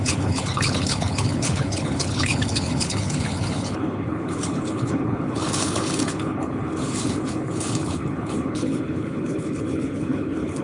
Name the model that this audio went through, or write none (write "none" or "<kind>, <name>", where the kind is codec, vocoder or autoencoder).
codec, HILCodec